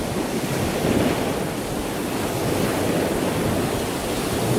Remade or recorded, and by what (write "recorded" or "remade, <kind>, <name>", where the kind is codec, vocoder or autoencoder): recorded